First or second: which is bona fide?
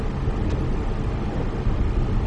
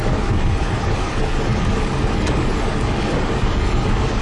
first